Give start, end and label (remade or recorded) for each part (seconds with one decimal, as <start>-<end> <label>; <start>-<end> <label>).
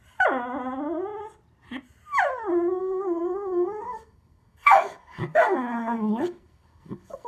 0.0-2.8 recorded; 2.8-7.3 remade